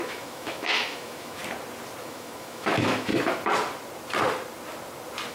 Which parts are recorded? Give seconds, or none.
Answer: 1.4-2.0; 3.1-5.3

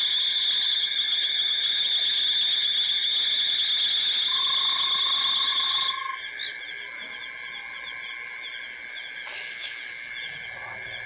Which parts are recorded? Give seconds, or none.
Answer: 0.0-11.1